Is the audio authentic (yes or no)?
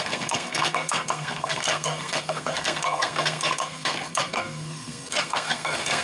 no